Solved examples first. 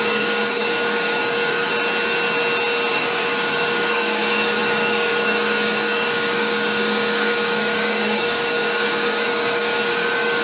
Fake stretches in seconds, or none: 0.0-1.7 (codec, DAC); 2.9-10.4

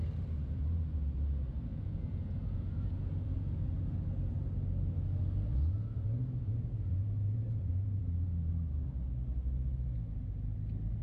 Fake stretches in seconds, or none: 1.7-3.7 (vocoder, Vocos); 8.0-8.5

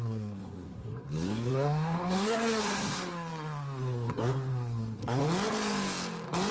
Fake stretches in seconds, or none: 0.0-5.2 (codec, SNAC)

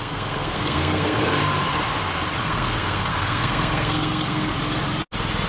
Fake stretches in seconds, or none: 0.0-1.4 (codec, SNAC); 2.4-4.5

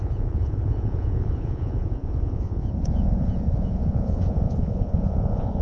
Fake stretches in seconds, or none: 0.0-5.6 (vocoder, Vocos)